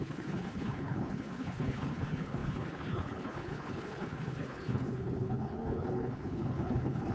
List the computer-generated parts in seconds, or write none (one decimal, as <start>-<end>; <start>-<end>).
0.0-7.1